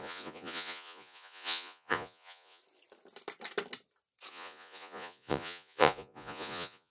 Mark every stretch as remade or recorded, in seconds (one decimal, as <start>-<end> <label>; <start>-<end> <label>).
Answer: 0.0-2.6 remade; 2.6-4.3 recorded; 4.3-6.9 remade